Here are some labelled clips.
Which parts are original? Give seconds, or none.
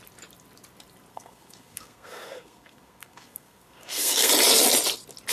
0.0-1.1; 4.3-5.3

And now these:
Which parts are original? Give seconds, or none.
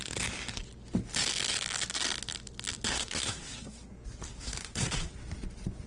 0.0-2.9; 3.9-4.3; 5.1-5.9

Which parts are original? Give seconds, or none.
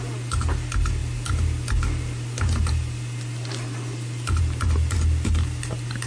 0.0-6.1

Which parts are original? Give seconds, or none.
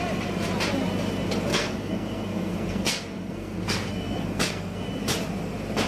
0.0-1.5; 4.8-5.9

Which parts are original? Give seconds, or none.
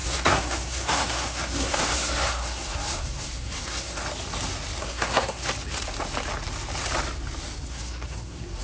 4.0-4.8; 5.4-7.7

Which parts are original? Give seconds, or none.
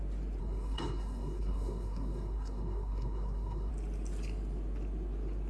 0.0-0.4; 3.7-5.5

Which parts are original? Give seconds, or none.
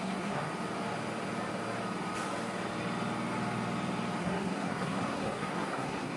0.5-4.2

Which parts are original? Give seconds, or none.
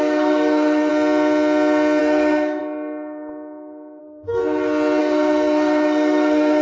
0.9-2.0; 2.6-4.0; 4.4-5.0